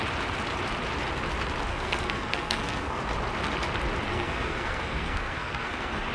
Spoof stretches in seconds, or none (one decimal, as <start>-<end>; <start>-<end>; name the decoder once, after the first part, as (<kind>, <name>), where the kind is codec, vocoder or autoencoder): 1.7-3.0 (codec, SNAC); 4.1-6.1